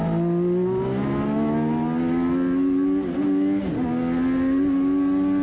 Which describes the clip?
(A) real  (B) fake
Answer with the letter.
A